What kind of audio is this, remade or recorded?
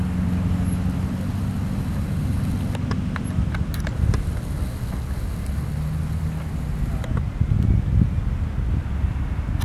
recorded